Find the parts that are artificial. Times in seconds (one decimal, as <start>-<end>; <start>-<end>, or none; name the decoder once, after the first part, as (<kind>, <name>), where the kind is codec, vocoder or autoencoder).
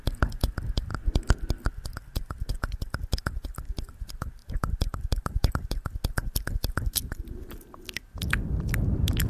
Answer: 4.4-5.5 (vocoder, BigVGAN v2)